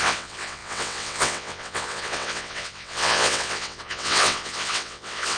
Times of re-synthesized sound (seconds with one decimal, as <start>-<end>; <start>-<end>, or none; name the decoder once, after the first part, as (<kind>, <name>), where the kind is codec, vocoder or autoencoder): 0.0-5.4 (vocoder, WaveNeXt)